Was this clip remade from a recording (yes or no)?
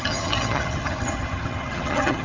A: yes